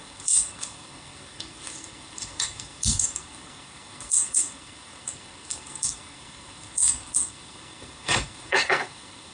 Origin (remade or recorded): remade